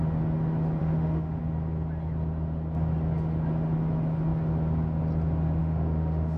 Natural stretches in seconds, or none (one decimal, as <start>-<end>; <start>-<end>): 0.0-0.8; 1.4-5.6